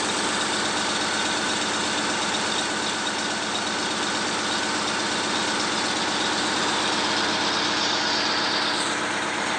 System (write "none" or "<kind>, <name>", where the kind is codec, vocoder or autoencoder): none